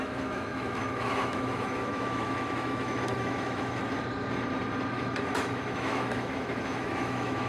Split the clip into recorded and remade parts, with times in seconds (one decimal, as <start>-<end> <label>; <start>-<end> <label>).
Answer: 0.0-3.8 remade; 3.8-4.9 recorded; 4.9-7.5 remade